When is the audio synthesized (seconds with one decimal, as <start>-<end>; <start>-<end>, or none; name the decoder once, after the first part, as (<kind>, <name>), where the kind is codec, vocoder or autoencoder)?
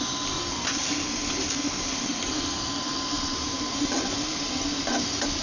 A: 0.8-2.1 (vocoder, BigVGAN v2); 2.9-4.5